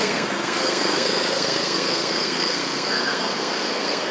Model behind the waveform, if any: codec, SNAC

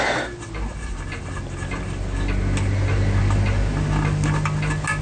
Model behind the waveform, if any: none